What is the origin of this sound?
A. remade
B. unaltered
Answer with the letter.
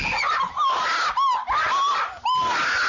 B